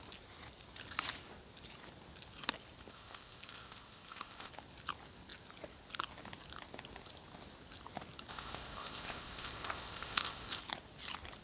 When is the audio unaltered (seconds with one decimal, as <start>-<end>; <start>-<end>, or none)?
0.0-2.9; 4.5-8.3; 10.6-11.4